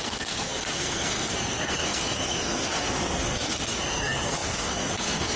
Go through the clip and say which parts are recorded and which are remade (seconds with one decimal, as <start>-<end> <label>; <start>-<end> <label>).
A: 0.0-5.4 remade